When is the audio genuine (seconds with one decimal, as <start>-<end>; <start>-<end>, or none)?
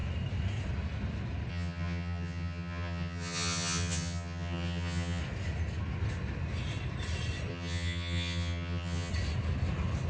0.0-1.5; 5.2-7.5; 9.1-10.1